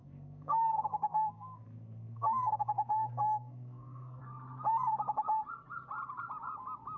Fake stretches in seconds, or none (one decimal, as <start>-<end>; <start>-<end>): 0.0-4.2